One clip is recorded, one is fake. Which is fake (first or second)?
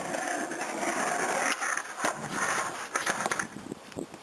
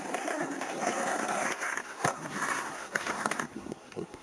second